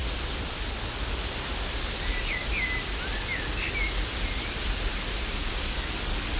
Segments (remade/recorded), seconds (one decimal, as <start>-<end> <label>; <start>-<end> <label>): 0.0-5.4 recorded; 5.4-6.4 remade